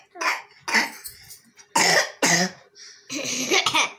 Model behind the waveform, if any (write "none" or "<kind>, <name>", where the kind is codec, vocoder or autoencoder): none